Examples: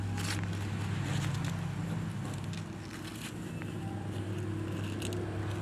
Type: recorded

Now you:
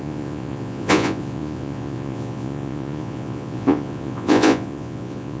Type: remade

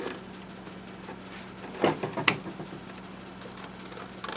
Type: recorded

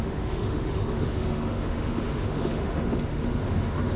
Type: remade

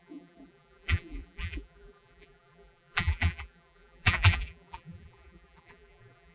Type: remade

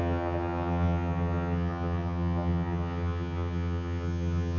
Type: remade